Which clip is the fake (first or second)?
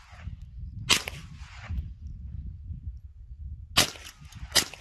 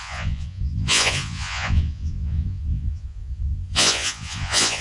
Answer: second